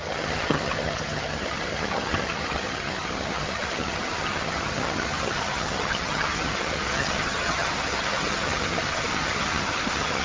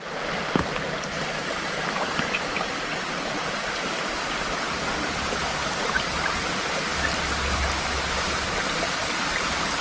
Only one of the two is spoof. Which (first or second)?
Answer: first